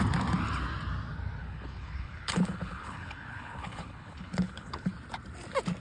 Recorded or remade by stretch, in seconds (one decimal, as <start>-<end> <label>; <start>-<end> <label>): 0.0-1.4 recorded; 1.4-4.9 remade; 4.9-5.8 recorded